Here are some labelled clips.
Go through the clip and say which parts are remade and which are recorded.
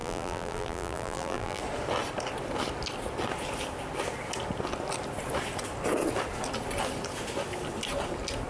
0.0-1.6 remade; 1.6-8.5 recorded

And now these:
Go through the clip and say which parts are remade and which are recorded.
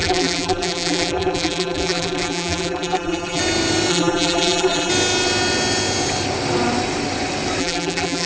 0.0-3.4 remade; 3.4-3.9 recorded; 3.9-4.9 remade; 4.9-7.6 recorded; 7.6-8.3 remade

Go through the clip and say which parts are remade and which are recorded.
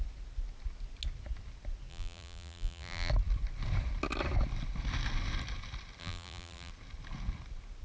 0.0-1.9 recorded; 1.9-3.1 remade; 3.1-6.0 recorded; 6.0-6.7 remade; 6.7-7.8 recorded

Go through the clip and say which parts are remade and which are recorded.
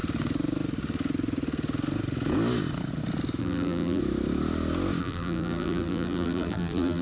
0.0-3.4 recorded; 3.4-4.0 remade; 4.0-5.0 recorded; 5.0-7.0 remade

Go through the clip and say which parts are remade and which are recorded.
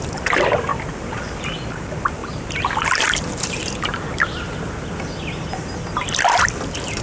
0.0-2.2 recorded; 2.2-4.0 remade; 4.0-7.0 recorded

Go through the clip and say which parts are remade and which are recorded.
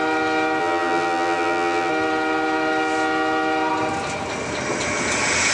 0.0-0.6 recorded; 0.6-1.9 remade; 1.9-5.5 recorded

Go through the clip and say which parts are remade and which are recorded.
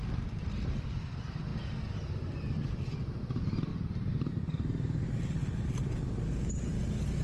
0.0-1.5 remade; 1.5-2.9 recorded; 2.9-5.4 remade; 5.4-6.4 recorded; 6.4-7.2 remade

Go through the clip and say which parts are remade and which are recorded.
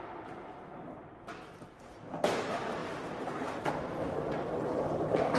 0.0-1.5 recorded; 1.5-2.0 remade; 2.0-2.8 recorded; 2.8-3.7 remade; 3.7-5.4 recorded